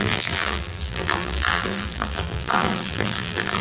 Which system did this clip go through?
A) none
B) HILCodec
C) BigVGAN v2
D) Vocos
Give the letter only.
C